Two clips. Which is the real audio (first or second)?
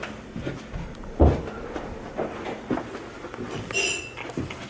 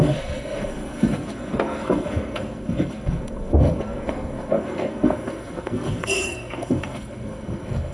first